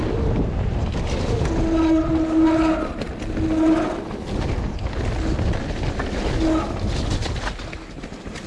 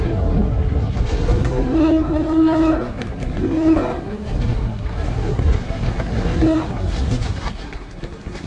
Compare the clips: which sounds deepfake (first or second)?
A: second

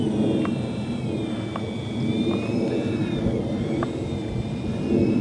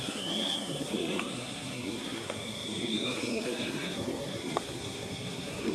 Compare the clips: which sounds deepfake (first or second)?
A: second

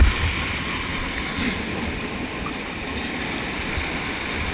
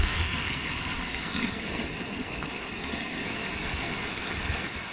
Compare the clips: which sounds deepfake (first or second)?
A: second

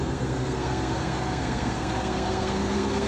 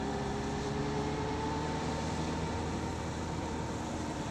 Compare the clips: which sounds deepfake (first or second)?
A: first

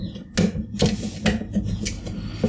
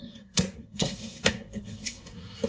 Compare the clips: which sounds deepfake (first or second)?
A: second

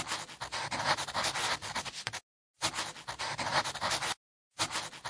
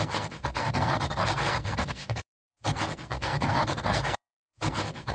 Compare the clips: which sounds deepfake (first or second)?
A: second